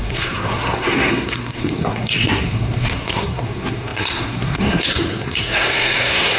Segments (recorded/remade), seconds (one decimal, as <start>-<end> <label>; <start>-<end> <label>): 0.0-6.4 remade